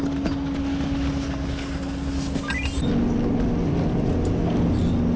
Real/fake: real